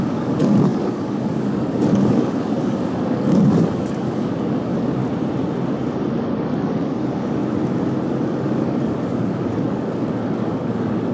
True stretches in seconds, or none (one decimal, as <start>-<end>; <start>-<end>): 5.0-6.4; 7.4-8.1